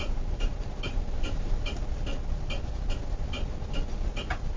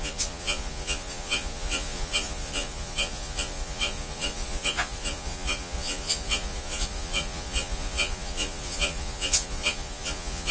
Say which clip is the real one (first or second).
first